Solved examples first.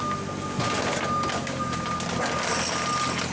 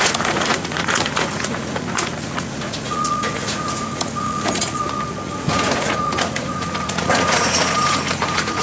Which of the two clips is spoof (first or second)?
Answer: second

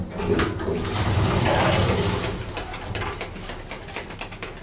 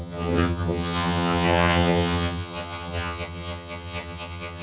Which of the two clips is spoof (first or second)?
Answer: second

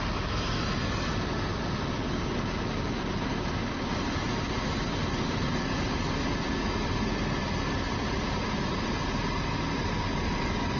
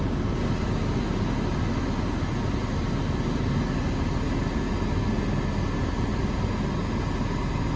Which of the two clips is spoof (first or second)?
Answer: first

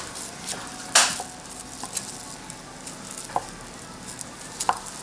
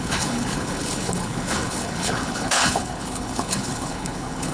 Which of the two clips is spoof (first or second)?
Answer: second